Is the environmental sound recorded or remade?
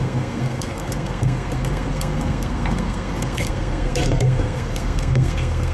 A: remade